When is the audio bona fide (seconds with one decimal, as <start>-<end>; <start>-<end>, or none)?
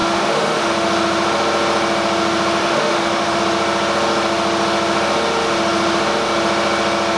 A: 0.7-2.6; 3.4-7.2